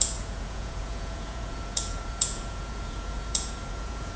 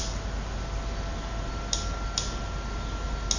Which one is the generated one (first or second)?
first